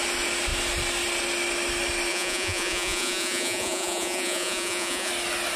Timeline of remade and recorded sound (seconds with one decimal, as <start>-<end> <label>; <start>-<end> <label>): 0.0-2.1 recorded; 2.1-5.1 remade; 5.1-5.6 recorded